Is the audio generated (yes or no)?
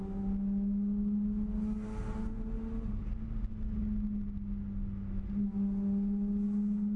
no